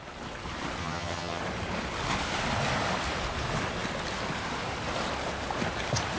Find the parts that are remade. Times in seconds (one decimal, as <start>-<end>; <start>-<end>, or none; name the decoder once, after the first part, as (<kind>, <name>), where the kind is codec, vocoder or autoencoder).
0.8-1.4 (vocoder, HiFi-GAN)